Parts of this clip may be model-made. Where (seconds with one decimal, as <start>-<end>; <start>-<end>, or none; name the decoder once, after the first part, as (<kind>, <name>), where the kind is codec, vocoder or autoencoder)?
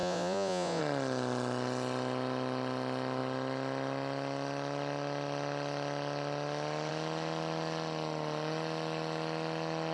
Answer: 0.0-0.8 (vocoder, Vocos)